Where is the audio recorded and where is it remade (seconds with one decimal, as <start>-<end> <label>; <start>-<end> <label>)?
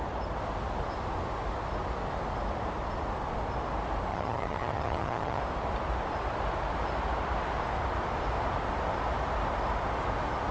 0.0-4.1 recorded; 4.1-5.4 remade; 5.4-10.5 recorded